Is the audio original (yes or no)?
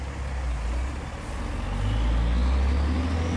yes